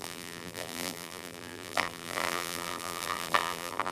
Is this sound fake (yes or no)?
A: yes